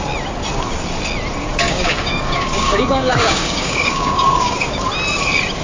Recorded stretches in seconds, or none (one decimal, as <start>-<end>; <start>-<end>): 0.0-1.5; 4.9-5.6